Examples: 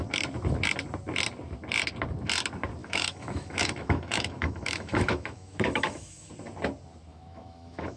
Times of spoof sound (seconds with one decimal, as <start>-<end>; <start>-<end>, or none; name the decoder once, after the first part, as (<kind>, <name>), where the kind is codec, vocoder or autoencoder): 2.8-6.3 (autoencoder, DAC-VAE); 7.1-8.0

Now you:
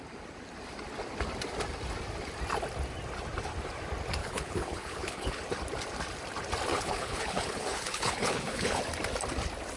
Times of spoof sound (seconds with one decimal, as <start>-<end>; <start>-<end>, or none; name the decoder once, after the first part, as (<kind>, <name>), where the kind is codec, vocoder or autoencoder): 4.2-5.4 (codec, HILCodec); 6.7-8.8

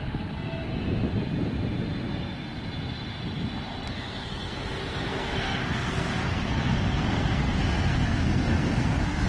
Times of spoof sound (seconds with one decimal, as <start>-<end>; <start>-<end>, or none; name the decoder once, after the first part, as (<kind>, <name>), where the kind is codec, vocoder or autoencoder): 0.0-0.7 (codec, SNAC); 3.9-9.3

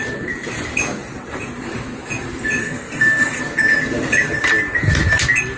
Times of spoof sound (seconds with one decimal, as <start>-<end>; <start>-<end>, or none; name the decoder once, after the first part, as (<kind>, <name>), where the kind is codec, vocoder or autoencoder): 2.6-3.4 (codec, SNAC)